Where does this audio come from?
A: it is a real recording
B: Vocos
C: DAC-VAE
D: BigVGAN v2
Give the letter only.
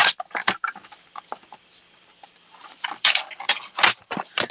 A